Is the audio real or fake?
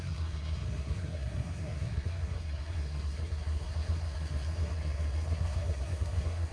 fake